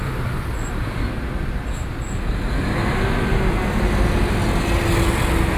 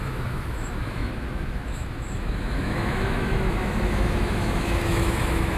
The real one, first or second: first